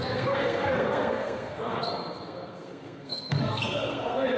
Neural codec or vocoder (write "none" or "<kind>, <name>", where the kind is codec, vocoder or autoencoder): codec, SNAC